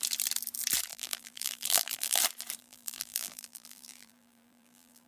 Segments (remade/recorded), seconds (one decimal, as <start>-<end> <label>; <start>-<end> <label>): 0.0-0.9 recorded; 0.9-2.2 remade; 2.2-2.6 recorded; 2.6-5.1 remade